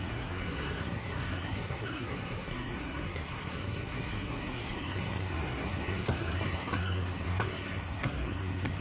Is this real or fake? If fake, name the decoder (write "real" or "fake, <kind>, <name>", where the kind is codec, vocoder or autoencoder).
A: fake, codec, SNAC